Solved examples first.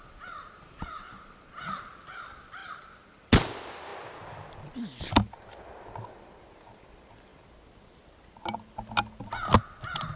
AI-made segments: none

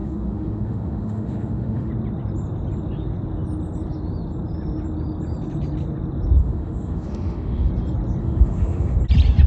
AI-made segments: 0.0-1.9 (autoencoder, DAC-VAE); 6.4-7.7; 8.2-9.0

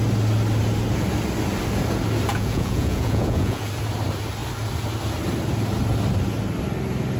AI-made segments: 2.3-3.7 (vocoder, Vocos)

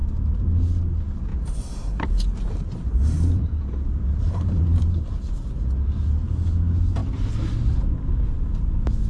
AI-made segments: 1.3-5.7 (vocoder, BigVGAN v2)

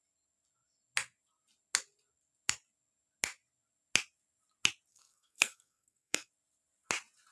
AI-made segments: 4.9-6.3 (codec, SNAC)